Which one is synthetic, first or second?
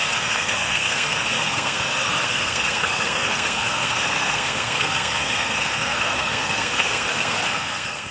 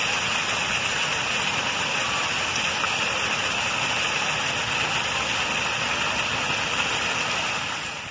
first